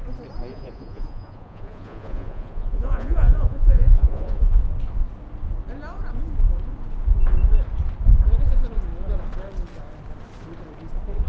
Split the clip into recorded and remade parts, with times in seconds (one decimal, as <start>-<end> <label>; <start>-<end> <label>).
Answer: 0.0-0.5 recorded; 0.5-4.6 remade; 4.6-11.3 recorded

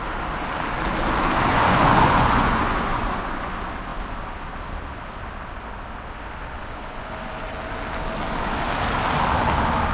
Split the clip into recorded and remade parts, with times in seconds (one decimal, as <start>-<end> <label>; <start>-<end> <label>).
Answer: 0.0-1.5 recorded; 1.5-3.5 remade; 3.5-6.6 recorded; 6.6-7.1 remade; 7.1-9.9 recorded

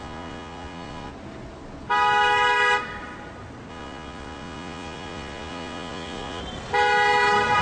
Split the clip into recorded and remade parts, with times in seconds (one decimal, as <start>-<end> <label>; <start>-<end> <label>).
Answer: 0.0-1.1 remade; 1.1-3.7 recorded; 3.7-6.4 remade; 6.4-7.6 recorded

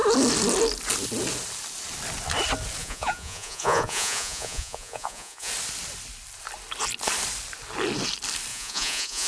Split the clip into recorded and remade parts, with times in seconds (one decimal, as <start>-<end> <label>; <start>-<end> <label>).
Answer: 0.0-2.8 recorded; 2.8-5.5 remade; 5.5-8.5 recorded; 8.5-9.3 remade

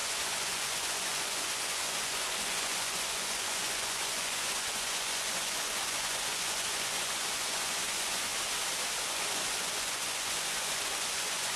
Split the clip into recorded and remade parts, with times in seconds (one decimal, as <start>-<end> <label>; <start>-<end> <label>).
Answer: 0.0-8.3 remade; 8.3-9.0 recorded; 9.0-11.6 remade

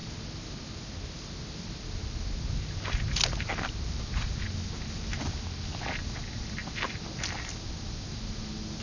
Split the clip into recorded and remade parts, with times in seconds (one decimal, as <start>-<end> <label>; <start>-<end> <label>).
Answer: 0.0-8.8 recorded